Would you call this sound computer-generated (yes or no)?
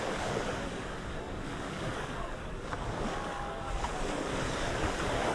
yes